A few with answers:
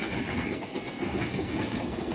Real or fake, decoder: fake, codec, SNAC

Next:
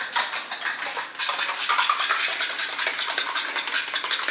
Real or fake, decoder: real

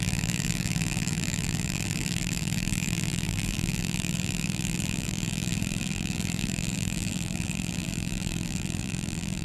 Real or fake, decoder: fake, vocoder, BigVGAN v2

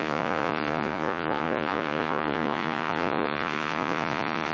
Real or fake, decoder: fake, vocoder, Vocos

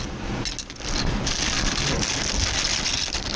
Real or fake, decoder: real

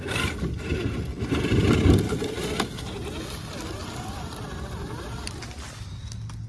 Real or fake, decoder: real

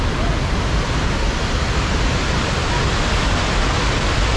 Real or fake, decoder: real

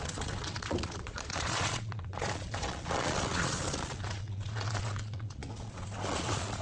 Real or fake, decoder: fake, vocoder, Vocos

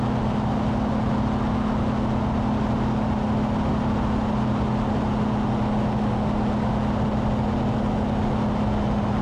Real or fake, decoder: real